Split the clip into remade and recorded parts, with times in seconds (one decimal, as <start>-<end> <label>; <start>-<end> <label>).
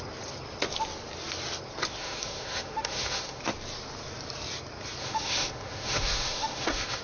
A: 0.0-2.0 recorded; 2.0-3.4 remade; 3.4-5.0 recorded; 5.0-7.0 remade